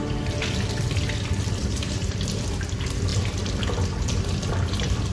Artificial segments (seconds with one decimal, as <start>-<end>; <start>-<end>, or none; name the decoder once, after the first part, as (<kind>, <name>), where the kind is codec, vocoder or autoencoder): 1.6-2.2 (vocoder, BigVGAN v2)